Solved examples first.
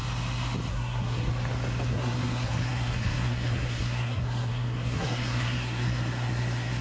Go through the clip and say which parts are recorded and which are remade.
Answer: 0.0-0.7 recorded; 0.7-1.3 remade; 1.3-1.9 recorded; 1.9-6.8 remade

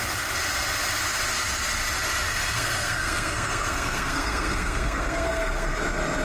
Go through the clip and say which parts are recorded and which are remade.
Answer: 0.0-2.3 recorded; 2.3-5.8 remade; 5.8-6.2 recorded

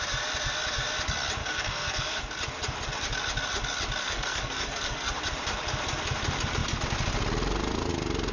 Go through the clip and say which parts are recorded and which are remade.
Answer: 0.0-1.4 recorded; 1.4-2.2 remade; 2.2-4.0 recorded; 4.0-5.1 remade; 5.1-8.3 recorded

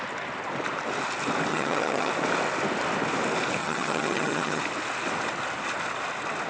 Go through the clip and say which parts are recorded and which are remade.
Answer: 0.0-1.5 recorded; 1.5-2.1 remade; 2.1-3.6 recorded; 3.6-4.6 remade; 4.6-6.5 recorded

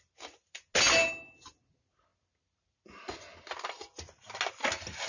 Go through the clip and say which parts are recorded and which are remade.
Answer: 0.0-5.1 recorded

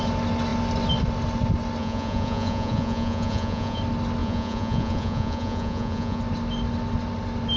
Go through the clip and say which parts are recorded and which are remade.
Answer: 0.0-1.8 recorded; 1.8-3.8 remade; 3.8-4.2 recorded; 4.2-6.2 remade; 6.2-7.6 recorded

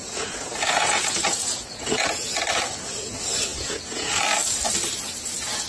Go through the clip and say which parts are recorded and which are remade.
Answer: 0.0-2.4 remade; 2.4-3.5 recorded; 3.5-4.1 remade; 4.1-5.7 recorded

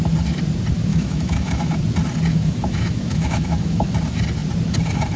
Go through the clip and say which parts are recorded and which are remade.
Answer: 0.0-0.9 recorded; 0.9-1.8 remade; 1.8-2.3 recorded; 2.3-3.9 remade; 3.9-5.2 recorded